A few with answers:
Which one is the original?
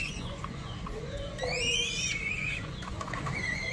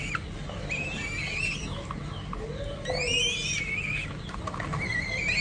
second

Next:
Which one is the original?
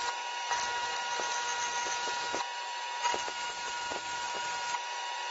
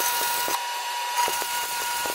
first